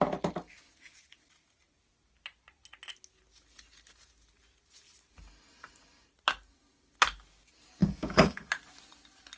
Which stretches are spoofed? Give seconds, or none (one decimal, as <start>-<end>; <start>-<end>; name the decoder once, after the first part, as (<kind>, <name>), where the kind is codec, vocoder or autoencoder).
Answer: 7.8-8.5 (codec, DAC)